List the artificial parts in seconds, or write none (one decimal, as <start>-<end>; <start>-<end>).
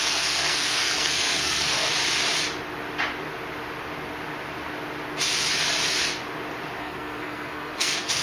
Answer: 0.0-1.9; 6.8-8.2